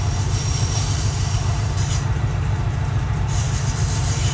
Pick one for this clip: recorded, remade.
remade